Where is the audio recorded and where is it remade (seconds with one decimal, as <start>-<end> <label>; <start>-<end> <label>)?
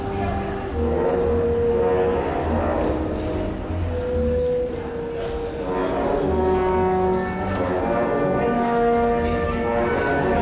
0.0-10.4 recorded